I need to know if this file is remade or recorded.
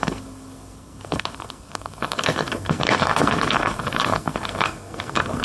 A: remade